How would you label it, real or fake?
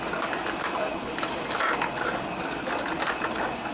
real